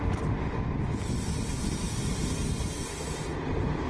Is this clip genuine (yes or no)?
yes